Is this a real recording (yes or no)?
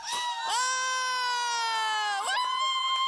yes